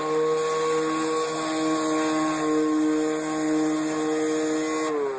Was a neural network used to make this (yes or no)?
no